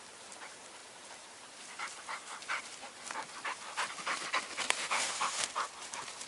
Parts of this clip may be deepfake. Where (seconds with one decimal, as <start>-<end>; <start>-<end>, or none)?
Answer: 4.8-5.5